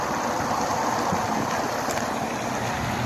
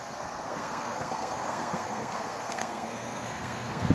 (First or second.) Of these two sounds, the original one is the first